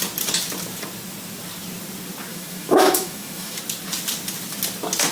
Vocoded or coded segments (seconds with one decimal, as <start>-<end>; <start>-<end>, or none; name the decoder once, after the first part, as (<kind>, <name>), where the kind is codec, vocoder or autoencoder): 2.3-3.6 (autoencoder, DAC-VAE)